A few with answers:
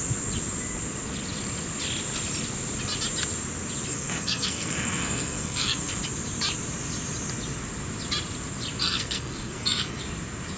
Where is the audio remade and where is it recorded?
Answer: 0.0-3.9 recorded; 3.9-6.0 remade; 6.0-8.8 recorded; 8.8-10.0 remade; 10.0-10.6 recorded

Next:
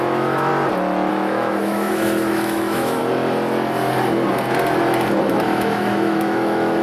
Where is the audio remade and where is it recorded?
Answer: 0.0-0.5 remade; 0.5-1.1 recorded; 1.1-3.0 remade; 3.0-5.2 recorded; 5.2-6.8 remade

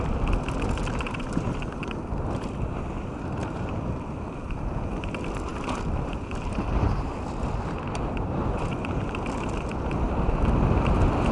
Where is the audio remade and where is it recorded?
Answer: 0.0-11.3 recorded

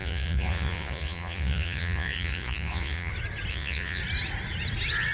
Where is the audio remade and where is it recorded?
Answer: 0.0-3.1 remade; 3.1-3.5 recorded; 3.5-4.0 remade; 4.0-5.1 recorded

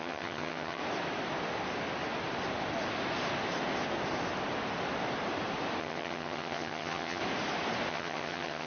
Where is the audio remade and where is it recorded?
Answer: 0.0-0.8 remade; 0.8-5.8 recorded; 5.8-7.2 remade; 7.2-7.9 recorded; 7.9-8.7 remade

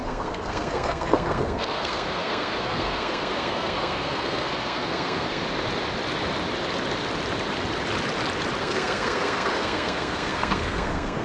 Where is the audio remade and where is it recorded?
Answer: 0.0-5.4 remade; 5.4-8.6 recorded; 8.6-11.2 remade